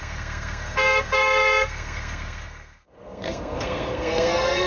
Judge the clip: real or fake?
fake